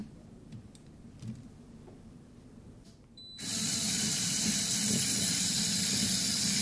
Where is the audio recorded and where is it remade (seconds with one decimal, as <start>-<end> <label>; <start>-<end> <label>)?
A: 0.0-4.0 remade; 4.0-6.6 recorded

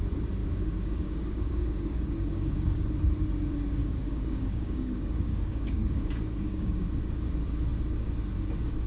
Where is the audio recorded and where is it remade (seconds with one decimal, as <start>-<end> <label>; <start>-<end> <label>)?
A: 0.0-0.4 recorded; 0.4-2.9 remade; 2.9-3.8 recorded; 3.8-6.9 remade; 6.9-8.9 recorded

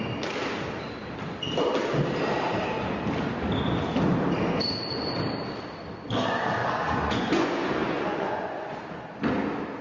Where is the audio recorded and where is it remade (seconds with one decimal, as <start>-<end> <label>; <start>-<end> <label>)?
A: 0.0-6.6 recorded; 6.6-8.8 remade; 8.8-9.8 recorded

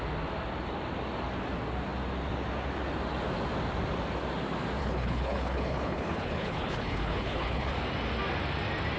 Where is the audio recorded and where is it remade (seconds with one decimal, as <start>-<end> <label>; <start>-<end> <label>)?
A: 0.0-4.8 recorded; 4.8-7.7 remade; 7.7-9.0 recorded

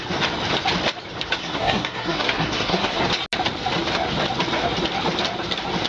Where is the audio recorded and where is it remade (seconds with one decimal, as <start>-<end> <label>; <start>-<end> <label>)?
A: 0.0-1.4 recorded; 1.4-3.0 remade; 3.0-5.9 recorded

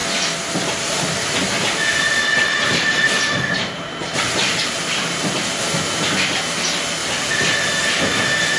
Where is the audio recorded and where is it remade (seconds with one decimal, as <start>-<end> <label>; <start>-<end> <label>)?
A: 0.0-1.9 recorded; 1.9-4.9 remade; 4.9-7.0 recorded; 7.0-7.7 remade; 7.7-8.6 recorded

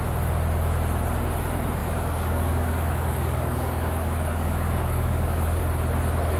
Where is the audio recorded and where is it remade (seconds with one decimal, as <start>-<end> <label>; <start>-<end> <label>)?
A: 0.0-1.8 recorded; 1.8-5.6 remade; 5.6-6.4 recorded

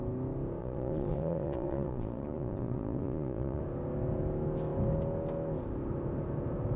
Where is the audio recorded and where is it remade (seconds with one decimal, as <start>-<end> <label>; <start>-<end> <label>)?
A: 0.0-0.6 recorded; 0.6-3.6 remade; 3.6-6.8 recorded